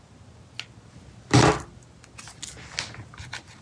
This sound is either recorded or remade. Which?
recorded